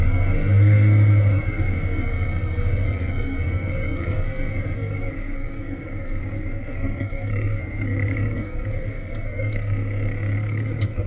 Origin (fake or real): fake